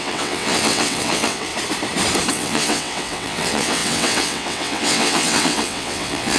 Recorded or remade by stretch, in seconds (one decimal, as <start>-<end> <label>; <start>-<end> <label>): 0.0-1.5 remade; 1.5-2.3 recorded; 2.3-6.4 remade